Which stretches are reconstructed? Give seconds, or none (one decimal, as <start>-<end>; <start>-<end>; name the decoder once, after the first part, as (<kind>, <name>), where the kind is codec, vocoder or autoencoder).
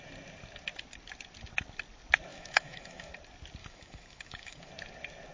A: 2.3-3.1 (autoencoder, DAC-VAE); 3.6-4.7